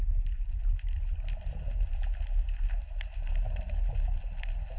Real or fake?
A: real